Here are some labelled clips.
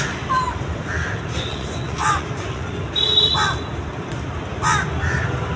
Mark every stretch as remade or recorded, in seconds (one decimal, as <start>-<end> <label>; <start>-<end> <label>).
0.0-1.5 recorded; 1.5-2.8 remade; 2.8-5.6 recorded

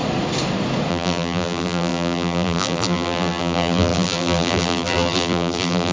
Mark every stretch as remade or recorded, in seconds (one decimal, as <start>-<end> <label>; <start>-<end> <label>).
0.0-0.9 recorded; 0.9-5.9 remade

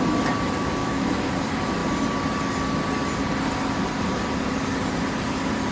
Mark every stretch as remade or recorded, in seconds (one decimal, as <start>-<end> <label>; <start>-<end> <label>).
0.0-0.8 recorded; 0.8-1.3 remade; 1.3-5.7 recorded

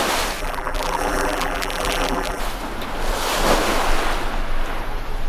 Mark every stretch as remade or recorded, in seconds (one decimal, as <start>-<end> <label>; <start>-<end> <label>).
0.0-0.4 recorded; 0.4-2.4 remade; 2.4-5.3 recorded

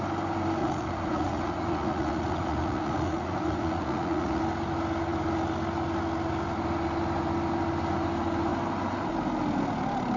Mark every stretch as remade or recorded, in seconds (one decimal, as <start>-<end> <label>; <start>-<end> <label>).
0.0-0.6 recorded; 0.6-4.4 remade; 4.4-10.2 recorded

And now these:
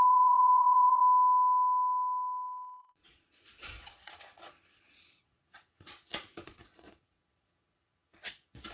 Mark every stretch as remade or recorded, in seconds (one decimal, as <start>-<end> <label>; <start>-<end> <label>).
0.0-1.0 remade; 1.0-2.8 recorded; 2.8-8.7 remade